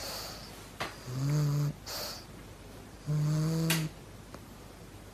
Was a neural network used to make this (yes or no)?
no